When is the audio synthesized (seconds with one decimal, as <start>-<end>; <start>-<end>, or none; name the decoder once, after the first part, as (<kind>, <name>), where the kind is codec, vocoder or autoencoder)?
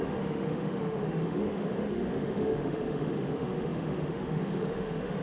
0.0-5.2 (autoencoder, DAC-VAE)